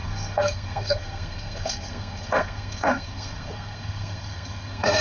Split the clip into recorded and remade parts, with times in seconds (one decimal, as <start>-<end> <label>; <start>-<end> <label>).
0.0-5.0 remade